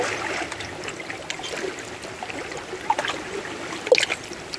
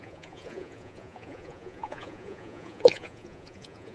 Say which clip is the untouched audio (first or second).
first